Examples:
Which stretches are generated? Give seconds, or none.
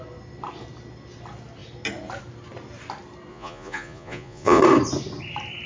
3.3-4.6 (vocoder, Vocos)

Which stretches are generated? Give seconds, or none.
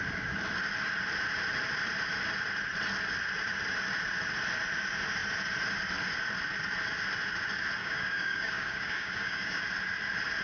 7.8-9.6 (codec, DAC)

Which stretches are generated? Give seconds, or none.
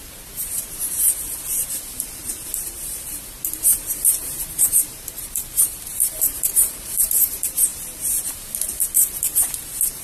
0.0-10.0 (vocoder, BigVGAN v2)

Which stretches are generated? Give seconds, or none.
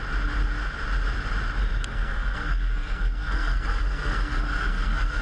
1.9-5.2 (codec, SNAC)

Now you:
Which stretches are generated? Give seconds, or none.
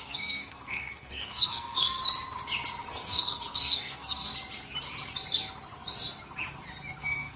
0.0-2.0 (codec, SNAC); 2.9-4.3; 7.0-7.4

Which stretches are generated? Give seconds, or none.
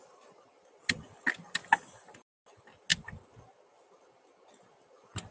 none